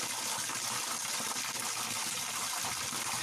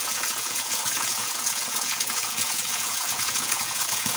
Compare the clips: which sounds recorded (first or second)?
first